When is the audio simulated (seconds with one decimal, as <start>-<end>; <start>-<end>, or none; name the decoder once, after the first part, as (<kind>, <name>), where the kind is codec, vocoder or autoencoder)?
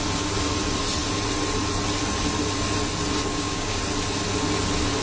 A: 3.3-3.8 (codec, DAC)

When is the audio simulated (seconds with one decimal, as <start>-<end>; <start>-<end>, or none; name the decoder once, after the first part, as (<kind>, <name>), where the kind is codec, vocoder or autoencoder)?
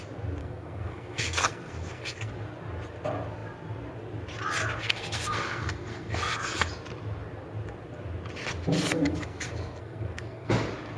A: 0.4-2.3 (codec, SNAC); 4.8-6.7; 8.9-10.5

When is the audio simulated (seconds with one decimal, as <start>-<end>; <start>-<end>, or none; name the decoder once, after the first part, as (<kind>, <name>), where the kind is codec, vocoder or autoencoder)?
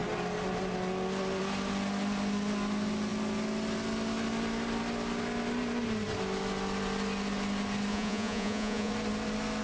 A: 7.9-8.9 (vocoder, Vocos)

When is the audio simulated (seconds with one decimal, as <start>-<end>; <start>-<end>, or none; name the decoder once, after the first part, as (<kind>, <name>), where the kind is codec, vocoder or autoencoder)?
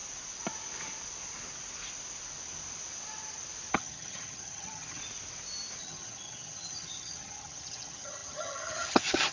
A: 3.7-5.0 (vocoder, HiFi-GAN); 5.8-9.3